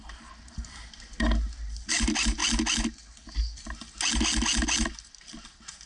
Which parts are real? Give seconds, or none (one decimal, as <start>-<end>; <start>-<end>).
0.0-5.9

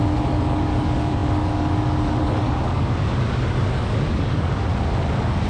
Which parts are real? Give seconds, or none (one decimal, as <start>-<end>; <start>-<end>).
4.7-5.5

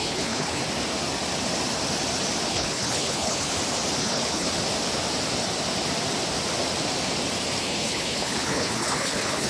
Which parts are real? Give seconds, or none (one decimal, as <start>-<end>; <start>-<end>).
0.6-2.5; 3.5-4.0; 4.5-7.6